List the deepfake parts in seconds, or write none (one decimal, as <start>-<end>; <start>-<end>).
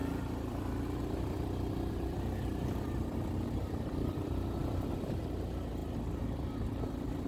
0.0-2.8; 4.6-5.2; 5.8-7.3